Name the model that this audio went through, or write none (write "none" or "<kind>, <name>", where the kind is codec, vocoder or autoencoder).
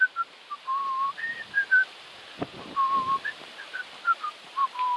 none